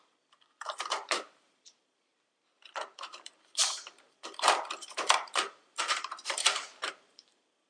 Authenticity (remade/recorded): remade